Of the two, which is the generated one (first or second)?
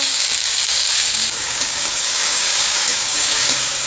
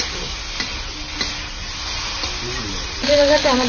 first